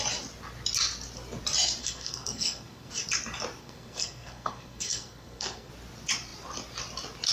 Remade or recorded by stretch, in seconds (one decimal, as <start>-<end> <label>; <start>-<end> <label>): 0.0-1.8 recorded; 1.8-2.9 remade; 2.9-3.6 recorded; 3.6-5.7 remade; 5.7-7.3 recorded